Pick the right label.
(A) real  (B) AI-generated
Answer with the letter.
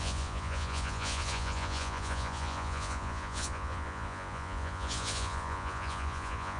B